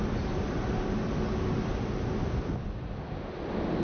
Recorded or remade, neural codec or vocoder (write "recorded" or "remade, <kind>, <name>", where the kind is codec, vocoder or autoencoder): recorded